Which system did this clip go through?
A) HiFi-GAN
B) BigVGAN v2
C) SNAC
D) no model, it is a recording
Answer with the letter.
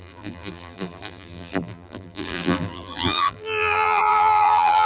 B